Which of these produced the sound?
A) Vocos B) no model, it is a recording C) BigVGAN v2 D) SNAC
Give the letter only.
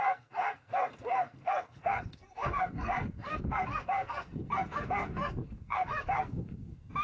D